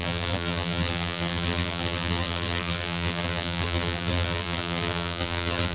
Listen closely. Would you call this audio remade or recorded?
remade